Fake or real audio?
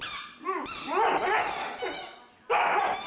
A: real